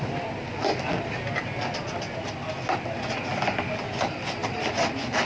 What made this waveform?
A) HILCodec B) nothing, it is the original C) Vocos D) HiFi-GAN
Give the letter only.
B